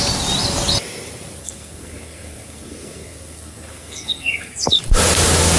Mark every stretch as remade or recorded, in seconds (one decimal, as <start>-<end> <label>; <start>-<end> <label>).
0.0-1.4 recorded; 1.4-4.8 remade; 4.8-5.6 recorded